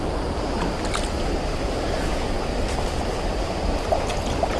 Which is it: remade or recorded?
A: recorded